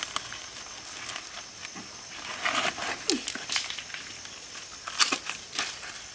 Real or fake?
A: real